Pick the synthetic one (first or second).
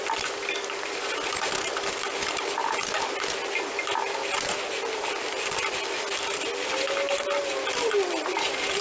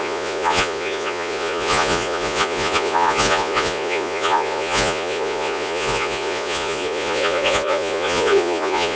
second